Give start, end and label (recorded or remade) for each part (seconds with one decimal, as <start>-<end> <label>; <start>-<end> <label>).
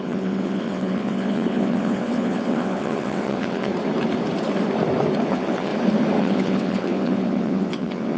0.0-3.7 remade; 3.7-5.3 recorded; 5.3-5.7 remade; 5.7-6.2 recorded; 6.2-8.2 remade